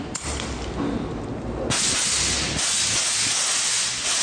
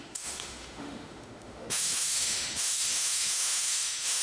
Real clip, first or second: first